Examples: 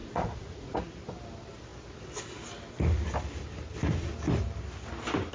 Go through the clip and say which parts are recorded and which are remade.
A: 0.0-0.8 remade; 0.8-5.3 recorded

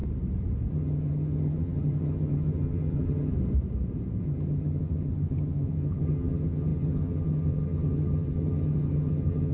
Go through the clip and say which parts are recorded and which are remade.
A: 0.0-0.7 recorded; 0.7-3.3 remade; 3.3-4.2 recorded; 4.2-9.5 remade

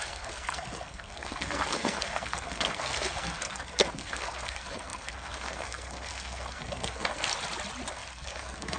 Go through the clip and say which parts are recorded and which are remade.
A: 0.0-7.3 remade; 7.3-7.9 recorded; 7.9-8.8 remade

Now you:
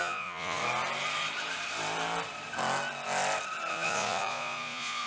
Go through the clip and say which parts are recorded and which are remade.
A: 0.0-0.6 remade; 0.6-3.7 recorded; 3.7-5.1 remade